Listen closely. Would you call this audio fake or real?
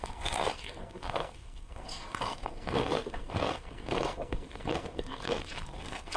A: fake